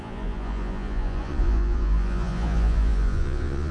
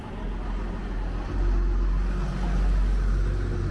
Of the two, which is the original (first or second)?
second